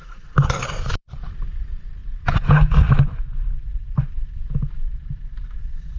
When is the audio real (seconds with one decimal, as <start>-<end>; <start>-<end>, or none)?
2.0-5.6